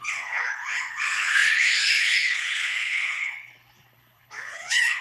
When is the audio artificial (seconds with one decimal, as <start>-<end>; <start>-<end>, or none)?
0.0-5.0